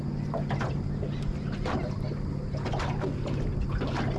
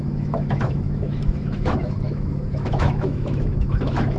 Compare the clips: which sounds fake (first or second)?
second